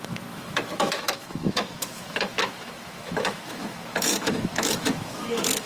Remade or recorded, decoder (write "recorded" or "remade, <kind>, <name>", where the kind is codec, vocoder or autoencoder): remade, autoencoder, DAC-VAE